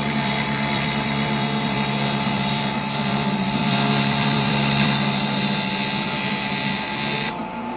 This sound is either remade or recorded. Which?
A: remade